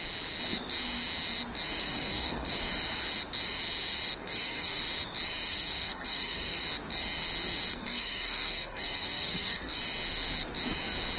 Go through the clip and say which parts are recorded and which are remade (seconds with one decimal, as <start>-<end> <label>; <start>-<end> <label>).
0.0-1.8 recorded; 1.8-2.5 remade; 2.5-4.2 recorded; 4.2-4.8 remade; 4.8-5.5 recorded; 5.5-6.6 remade; 6.6-7.7 recorded; 7.7-9.8 remade; 9.8-11.2 recorded